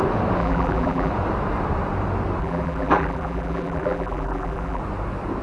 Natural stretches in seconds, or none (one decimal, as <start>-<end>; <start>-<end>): 0.0-0.4; 1.1-2.4; 4.8-5.4